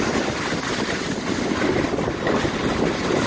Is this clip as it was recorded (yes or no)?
yes